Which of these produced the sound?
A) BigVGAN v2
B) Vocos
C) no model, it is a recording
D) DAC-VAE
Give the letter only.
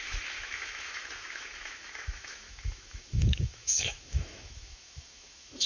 D